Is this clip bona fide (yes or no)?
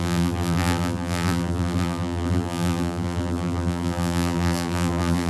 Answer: no